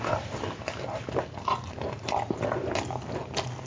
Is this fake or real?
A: real